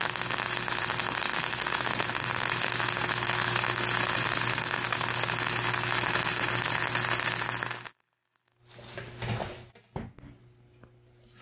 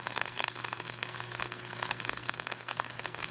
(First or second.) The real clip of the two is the first